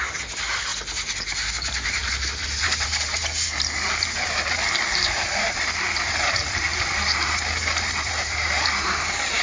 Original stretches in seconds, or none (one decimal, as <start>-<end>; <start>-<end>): 0.7-1.5